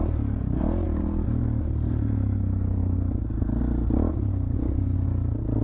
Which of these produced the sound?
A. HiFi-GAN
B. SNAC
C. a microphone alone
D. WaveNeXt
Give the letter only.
C